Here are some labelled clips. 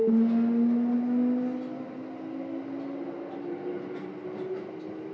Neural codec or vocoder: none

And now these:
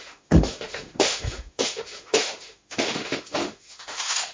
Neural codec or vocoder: autoencoder, DAC-VAE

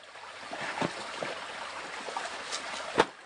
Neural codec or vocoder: none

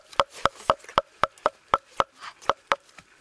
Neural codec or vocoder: none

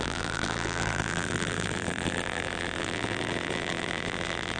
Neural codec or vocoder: vocoder, BigVGAN v2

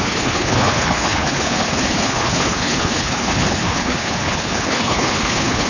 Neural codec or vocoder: codec, HILCodec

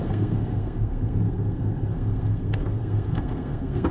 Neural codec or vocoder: codec, SNAC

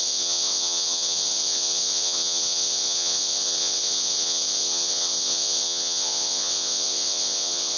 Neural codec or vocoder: vocoder, WaveNeXt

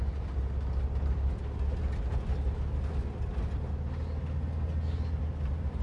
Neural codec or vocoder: none